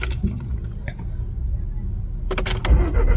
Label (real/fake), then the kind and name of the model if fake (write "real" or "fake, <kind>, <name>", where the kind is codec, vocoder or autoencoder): real